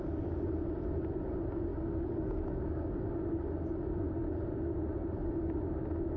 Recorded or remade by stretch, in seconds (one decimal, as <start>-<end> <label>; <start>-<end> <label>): 0.0-1.7 recorded; 1.7-3.0 remade; 3.0-6.2 recorded